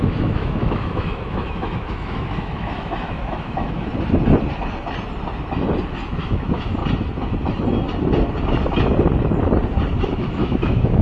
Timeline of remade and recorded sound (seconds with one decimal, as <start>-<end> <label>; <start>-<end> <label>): 0.0-3.9 remade; 3.9-6.2 recorded; 6.2-6.8 remade; 6.8-10.0 recorded; 10.0-11.0 remade